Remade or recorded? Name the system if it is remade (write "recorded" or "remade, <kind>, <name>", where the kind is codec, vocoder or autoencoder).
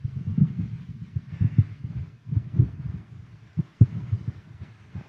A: remade, codec, SNAC